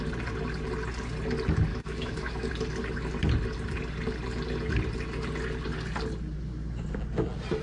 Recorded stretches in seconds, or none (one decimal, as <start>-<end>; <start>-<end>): 0.0-1.7; 2.5-7.6